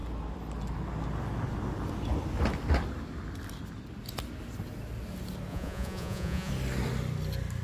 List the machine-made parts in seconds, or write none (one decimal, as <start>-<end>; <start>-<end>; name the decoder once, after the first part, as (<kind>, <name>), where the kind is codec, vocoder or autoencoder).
5.5-6.5 (vocoder, Vocos)